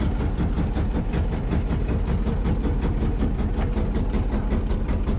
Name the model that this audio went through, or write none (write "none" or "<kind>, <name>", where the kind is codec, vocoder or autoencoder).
none